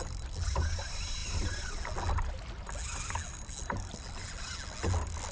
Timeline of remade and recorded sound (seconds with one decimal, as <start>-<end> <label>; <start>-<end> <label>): 0.0-5.3 recorded